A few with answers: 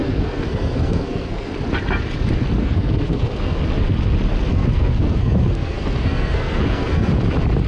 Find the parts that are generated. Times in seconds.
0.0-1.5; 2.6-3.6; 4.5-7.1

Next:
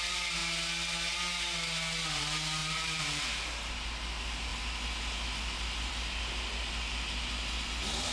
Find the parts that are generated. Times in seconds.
2.6-3.2

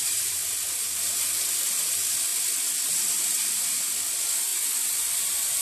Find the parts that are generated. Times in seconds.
0.0-0.4; 1.0-2.3; 4.1-5.6

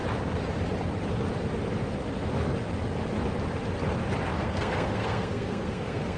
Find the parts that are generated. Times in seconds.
4.3-6.2

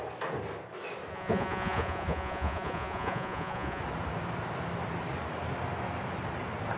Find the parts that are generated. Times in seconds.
1.1-3.8